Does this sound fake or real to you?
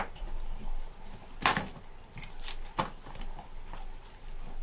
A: real